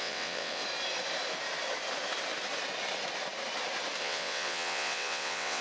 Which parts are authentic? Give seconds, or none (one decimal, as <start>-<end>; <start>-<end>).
0.6-4.0